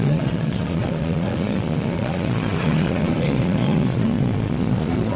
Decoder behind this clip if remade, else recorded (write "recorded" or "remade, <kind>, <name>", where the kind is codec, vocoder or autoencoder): remade, vocoder, Vocos